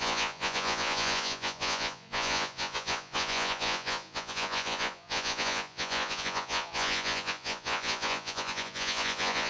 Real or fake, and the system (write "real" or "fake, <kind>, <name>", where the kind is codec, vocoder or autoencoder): fake, vocoder, Vocos